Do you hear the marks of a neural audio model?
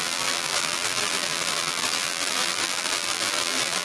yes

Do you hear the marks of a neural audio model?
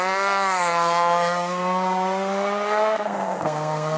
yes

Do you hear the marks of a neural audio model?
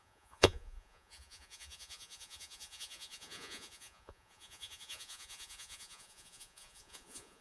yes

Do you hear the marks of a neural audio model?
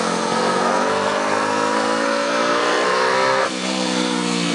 yes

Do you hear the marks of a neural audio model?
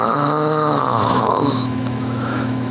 yes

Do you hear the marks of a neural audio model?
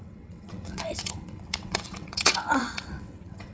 yes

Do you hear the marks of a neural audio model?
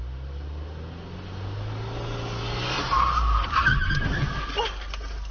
no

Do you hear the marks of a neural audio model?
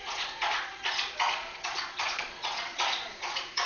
yes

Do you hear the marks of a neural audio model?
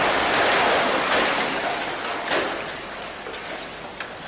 no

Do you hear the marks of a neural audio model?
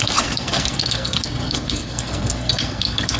yes